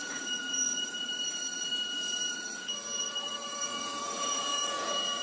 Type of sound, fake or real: fake